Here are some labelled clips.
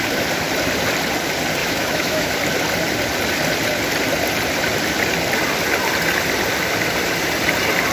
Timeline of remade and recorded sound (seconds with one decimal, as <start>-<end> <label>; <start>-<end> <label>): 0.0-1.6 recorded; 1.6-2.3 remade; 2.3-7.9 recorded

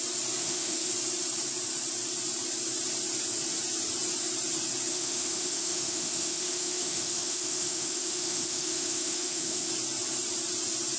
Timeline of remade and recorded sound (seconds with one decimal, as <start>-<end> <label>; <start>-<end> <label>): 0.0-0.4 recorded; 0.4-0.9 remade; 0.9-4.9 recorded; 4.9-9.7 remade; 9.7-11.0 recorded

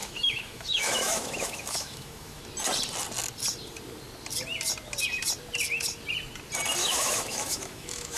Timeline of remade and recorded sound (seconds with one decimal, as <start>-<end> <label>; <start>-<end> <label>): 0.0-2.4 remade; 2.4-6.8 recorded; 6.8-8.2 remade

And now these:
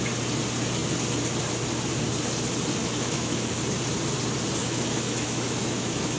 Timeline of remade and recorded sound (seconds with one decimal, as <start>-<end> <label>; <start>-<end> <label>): 0.0-2.8 recorded; 2.8-3.5 remade; 3.5-4.6 recorded; 4.6-6.2 remade